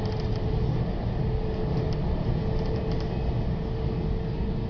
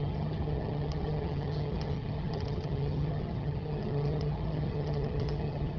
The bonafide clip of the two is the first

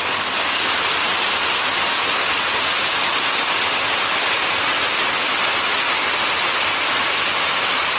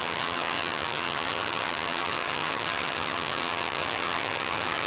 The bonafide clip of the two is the first